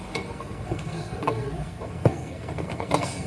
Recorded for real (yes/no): no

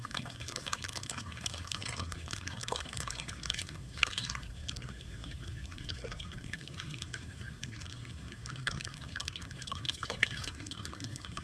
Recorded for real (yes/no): no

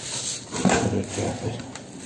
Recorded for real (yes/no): yes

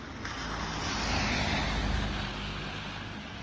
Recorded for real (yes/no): yes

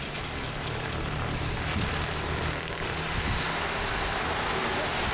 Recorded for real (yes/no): yes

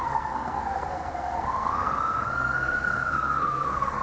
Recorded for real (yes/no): no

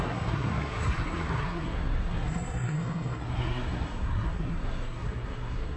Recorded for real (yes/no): no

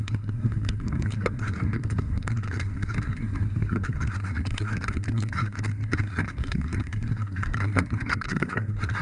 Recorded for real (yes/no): no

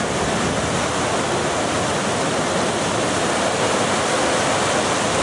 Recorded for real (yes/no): yes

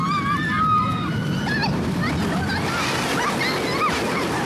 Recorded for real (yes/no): yes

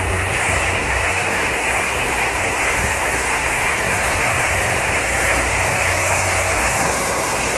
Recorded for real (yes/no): no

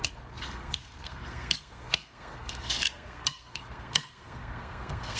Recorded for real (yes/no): no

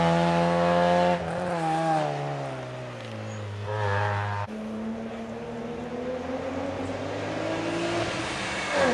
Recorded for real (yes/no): yes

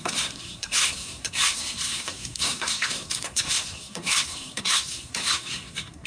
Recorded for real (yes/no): no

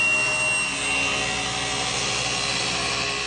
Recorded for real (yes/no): yes